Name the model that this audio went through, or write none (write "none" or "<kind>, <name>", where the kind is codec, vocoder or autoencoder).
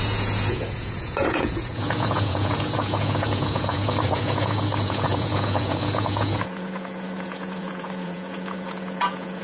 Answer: vocoder, Vocos